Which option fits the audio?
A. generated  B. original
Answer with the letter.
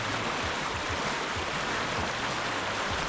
B